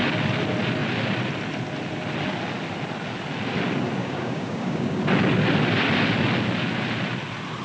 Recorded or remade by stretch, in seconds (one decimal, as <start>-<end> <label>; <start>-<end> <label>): 0.0-4.0 recorded; 4.0-5.0 remade; 5.0-7.6 recorded